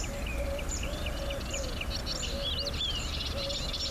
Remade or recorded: recorded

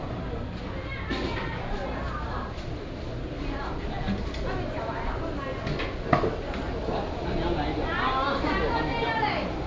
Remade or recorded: recorded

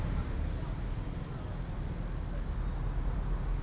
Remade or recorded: recorded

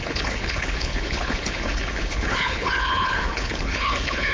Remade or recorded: remade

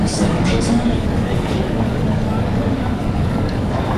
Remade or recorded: remade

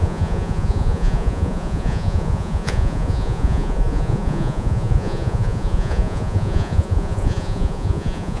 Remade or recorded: remade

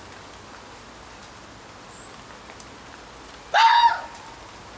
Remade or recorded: recorded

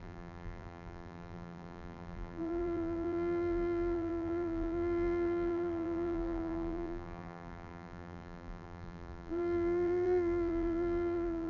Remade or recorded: remade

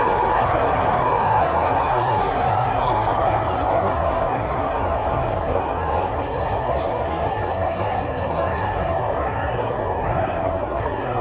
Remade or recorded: remade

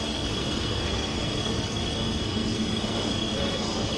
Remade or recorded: remade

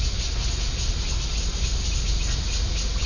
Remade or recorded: recorded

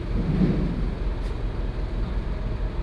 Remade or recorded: recorded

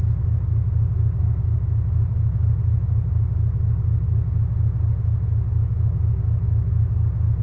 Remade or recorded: recorded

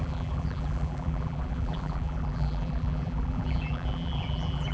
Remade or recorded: remade